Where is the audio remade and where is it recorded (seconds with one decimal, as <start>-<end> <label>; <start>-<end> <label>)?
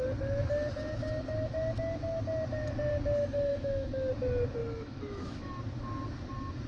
0.0-3.5 recorded; 3.5-4.1 remade; 4.1-4.6 recorded; 4.6-5.5 remade; 5.5-6.7 recorded